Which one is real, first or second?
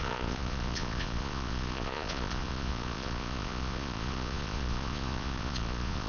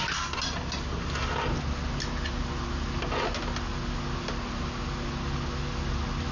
second